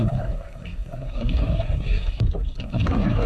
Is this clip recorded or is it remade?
remade